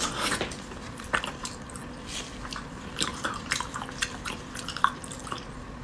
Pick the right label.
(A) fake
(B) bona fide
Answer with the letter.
A